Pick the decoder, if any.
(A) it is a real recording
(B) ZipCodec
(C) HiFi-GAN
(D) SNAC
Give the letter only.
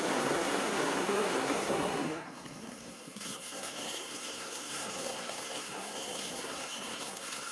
D